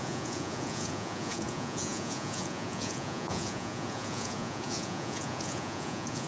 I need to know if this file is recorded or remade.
remade